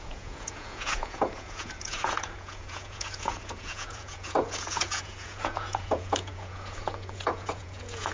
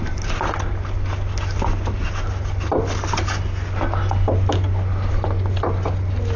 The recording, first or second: second